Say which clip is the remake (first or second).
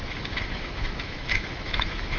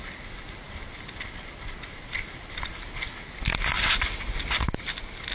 first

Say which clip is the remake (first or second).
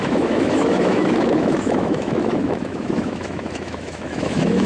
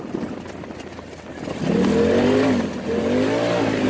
first